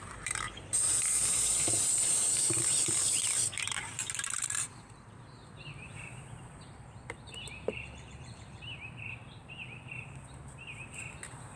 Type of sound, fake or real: fake